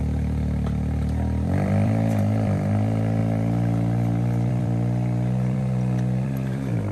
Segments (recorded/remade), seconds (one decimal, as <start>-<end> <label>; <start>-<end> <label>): 0.0-6.9 remade